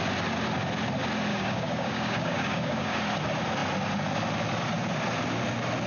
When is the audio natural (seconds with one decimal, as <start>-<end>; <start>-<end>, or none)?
0.0-1.3; 3.0-5.9